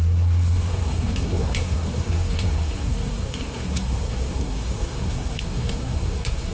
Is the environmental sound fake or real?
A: fake